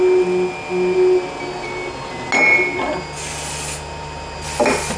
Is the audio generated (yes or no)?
no